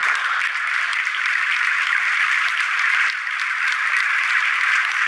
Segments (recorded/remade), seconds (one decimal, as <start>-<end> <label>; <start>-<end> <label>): 0.0-0.5 remade; 0.5-0.9 recorded; 0.9-4.0 remade; 4.0-5.1 recorded